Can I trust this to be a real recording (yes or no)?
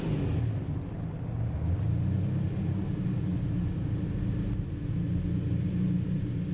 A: yes